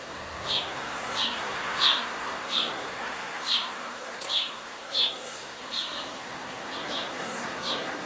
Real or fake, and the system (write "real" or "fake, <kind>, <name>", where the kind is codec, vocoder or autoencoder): fake, codec, SNAC